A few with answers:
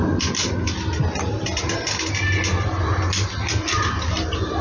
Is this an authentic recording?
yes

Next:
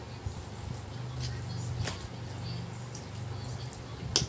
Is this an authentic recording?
yes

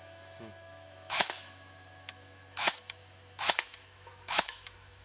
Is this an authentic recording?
no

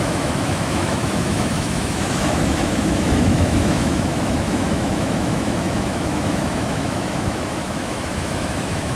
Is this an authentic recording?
no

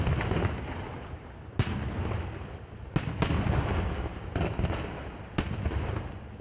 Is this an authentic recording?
yes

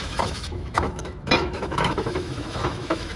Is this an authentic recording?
no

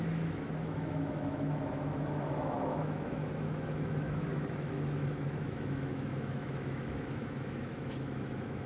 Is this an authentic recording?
no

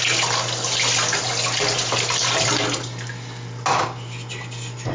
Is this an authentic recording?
yes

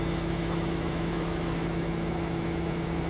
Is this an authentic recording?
no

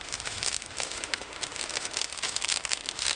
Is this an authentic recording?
no